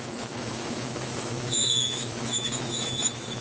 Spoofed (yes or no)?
yes